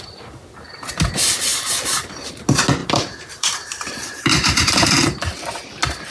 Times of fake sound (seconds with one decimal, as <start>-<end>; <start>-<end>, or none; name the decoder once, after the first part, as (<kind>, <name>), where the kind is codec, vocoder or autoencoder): 2.8-4.9 (vocoder, BigVGAN v2)